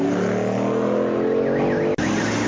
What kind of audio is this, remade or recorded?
recorded